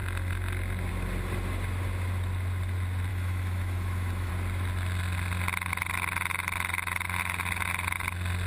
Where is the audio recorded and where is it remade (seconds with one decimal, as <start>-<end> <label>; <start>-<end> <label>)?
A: 0.0-3.1 recorded; 3.1-4.3 remade; 4.3-8.5 recorded